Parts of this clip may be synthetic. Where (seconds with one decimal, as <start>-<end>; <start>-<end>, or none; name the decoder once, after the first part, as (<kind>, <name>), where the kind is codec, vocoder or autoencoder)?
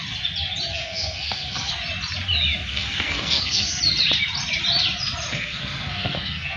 0.7-1.7 (codec, SNAC); 2.7-3.8; 5.3-6.6